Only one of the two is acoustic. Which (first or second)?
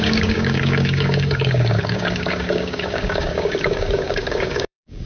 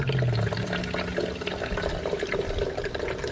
second